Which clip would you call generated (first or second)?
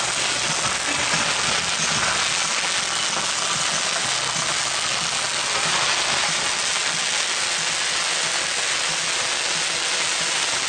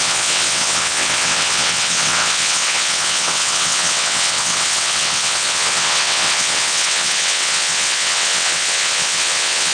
second